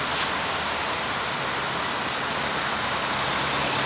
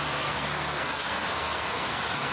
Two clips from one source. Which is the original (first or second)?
first